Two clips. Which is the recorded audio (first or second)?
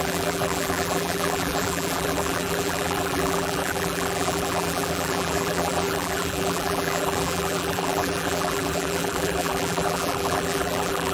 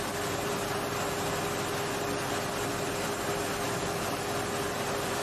second